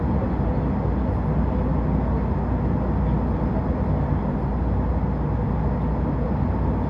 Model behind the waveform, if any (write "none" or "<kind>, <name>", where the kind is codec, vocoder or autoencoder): none